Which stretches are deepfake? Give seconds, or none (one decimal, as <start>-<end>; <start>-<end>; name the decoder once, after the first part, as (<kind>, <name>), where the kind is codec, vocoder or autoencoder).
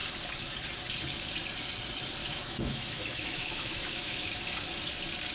2.2-4.3 (autoencoder, DAC-VAE)